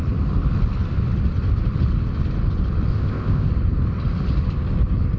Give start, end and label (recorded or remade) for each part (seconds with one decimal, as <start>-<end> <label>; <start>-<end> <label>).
0.0-2.9 recorded; 2.9-3.5 remade; 3.5-5.2 recorded